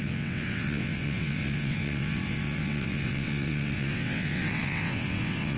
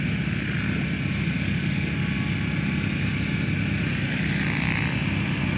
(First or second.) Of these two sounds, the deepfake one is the first